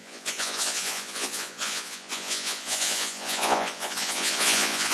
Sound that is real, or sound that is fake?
fake